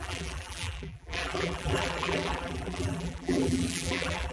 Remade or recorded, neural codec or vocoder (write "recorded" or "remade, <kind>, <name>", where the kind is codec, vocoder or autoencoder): remade, vocoder, BigVGAN v2